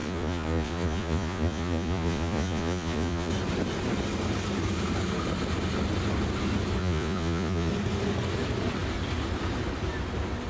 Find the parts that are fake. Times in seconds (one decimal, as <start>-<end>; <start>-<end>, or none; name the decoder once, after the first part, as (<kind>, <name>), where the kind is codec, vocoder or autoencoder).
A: 0.0-3.3 (vocoder, Vocos); 6.8-7.7